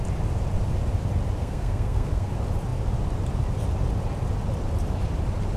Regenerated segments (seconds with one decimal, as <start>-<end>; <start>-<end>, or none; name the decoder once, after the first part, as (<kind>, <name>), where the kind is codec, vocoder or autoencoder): 1.4-2.3 (codec, SNAC)